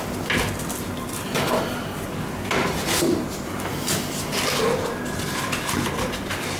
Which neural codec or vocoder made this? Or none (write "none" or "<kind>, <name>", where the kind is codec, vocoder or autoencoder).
none